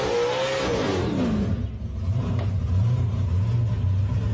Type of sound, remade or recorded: recorded